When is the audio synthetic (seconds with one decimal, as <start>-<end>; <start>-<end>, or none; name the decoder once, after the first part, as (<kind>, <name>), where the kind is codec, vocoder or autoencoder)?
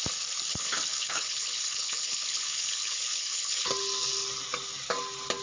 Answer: 0.5-3.7 (codec, HILCodec)